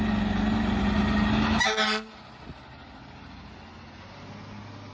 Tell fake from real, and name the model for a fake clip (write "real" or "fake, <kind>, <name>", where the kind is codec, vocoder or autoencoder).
real